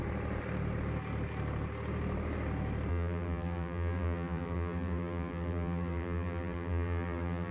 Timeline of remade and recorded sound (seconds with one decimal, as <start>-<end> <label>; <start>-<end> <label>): 0.0-2.9 recorded; 2.9-7.5 remade